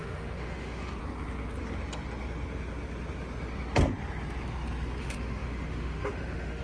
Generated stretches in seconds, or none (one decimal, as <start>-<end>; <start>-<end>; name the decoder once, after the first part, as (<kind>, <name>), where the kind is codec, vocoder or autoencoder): 0.0-1.0 (autoencoder, DAC-VAE); 5.0-6.6